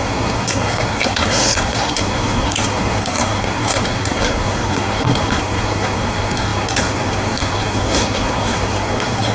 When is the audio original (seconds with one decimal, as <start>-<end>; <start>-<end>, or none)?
none